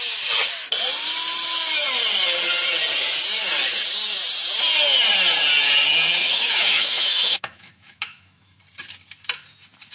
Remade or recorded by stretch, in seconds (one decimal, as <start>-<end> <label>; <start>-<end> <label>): 0.0-6.2 recorded; 6.2-8.6 remade; 8.6-9.9 recorded